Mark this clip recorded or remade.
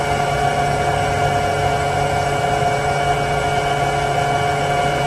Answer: recorded